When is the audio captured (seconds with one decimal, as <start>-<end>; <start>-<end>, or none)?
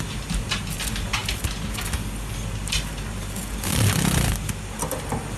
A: 0.0-5.4